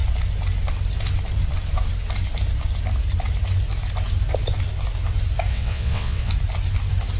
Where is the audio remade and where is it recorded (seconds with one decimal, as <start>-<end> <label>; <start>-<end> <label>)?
0.0-5.5 recorded; 5.5-6.3 remade; 6.3-7.2 recorded